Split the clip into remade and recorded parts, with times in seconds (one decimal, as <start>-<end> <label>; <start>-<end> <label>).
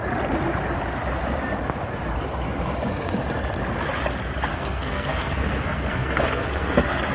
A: 0.0-4.5 recorded; 4.5-7.1 remade